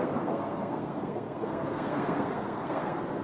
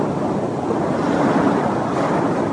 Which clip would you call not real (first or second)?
first